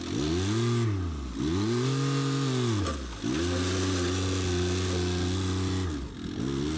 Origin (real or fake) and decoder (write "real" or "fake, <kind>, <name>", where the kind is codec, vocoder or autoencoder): real